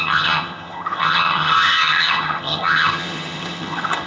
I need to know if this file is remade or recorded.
remade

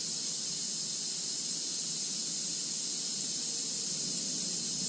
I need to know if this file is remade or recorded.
recorded